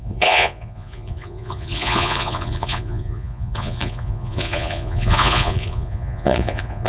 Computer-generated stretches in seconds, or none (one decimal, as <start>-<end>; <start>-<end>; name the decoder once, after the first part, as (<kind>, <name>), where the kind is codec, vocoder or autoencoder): 0.0-6.9 (vocoder, Vocos)